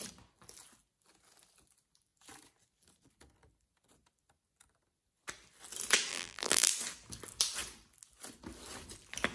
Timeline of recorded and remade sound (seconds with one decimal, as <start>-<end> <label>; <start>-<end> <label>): 0.0-6.1 recorded; 6.1-6.7 remade; 6.7-9.3 recorded